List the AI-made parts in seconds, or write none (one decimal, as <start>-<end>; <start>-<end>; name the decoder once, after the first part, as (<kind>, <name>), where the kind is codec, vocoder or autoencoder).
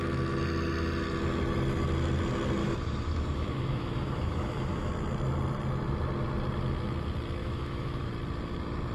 2.6-4.9 (autoencoder, DAC-VAE); 7.4-8.1